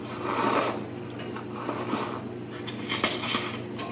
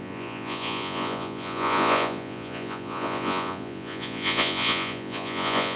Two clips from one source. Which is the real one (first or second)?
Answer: first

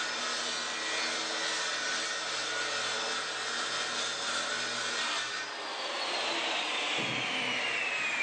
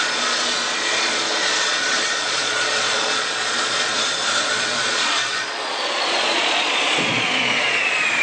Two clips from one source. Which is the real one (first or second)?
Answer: first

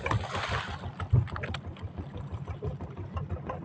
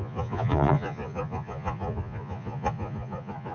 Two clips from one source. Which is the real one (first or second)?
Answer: first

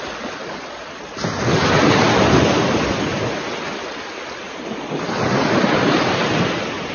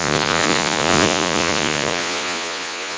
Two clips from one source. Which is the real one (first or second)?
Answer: first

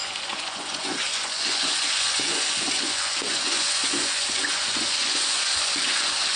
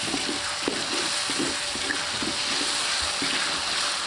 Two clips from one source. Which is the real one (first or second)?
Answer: second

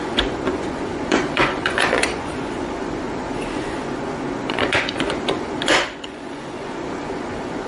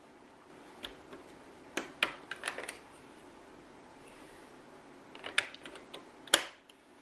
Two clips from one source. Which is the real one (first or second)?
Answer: second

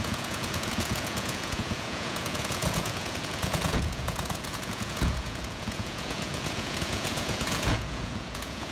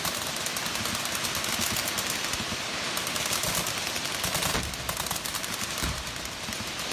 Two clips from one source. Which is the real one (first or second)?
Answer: second